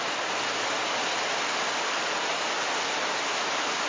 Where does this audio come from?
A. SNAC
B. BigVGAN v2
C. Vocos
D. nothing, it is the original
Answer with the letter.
D